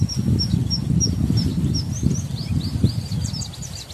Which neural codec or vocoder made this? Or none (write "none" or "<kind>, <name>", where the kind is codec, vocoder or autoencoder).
none